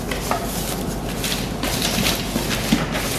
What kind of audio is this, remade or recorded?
recorded